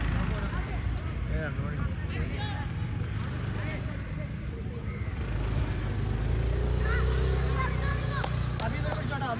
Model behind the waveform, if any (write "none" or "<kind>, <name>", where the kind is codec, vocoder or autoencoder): none